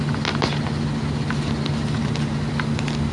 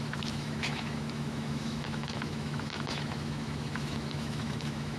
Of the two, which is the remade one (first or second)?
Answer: second